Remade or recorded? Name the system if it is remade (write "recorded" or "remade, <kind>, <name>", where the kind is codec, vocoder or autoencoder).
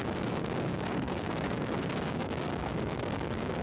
remade, codec, DAC